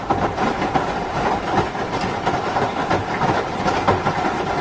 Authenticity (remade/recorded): remade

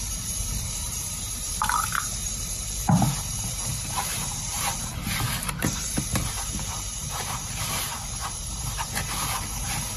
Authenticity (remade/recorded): remade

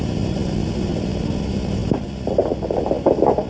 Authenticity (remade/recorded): recorded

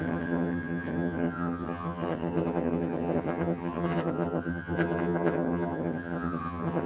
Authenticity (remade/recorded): remade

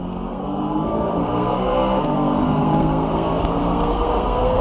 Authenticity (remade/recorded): remade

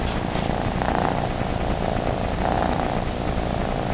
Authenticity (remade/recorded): recorded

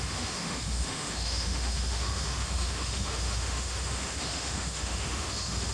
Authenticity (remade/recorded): remade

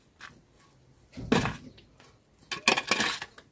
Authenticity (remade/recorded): recorded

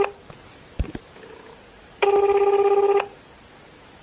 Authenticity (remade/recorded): recorded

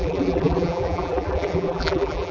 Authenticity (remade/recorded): remade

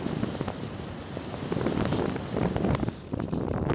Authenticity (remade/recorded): remade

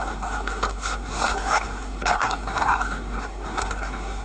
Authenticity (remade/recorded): remade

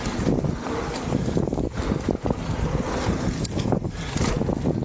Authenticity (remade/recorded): recorded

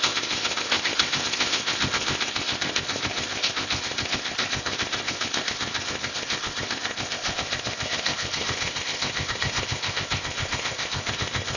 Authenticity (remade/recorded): remade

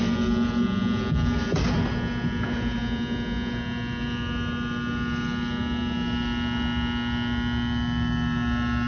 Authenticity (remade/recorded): recorded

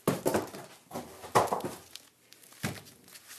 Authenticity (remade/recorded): recorded